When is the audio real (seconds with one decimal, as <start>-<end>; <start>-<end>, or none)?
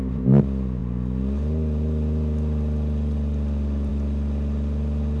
0.0-5.2